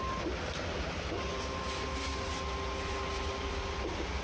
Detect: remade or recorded recorded